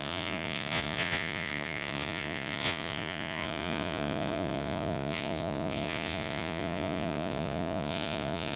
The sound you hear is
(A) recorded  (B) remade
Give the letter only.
B